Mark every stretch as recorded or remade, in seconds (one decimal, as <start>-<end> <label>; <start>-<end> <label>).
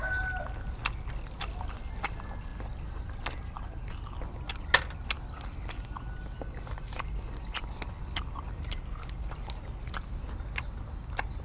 0.0-11.4 recorded